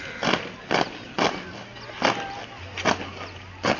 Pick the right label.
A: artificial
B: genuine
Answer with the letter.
B